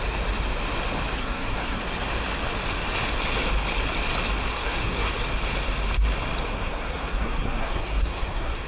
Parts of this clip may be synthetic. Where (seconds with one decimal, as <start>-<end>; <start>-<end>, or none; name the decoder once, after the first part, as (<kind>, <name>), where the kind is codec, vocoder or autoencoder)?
1.2-1.8 (codec, SNAC); 4.5-5.1; 6.5-8.7